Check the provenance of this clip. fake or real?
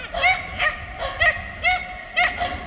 real